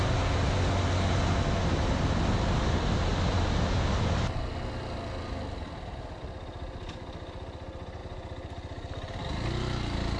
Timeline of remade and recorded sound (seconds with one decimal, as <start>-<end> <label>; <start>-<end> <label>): 0.0-10.2 recorded